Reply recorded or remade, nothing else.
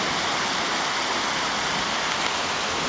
recorded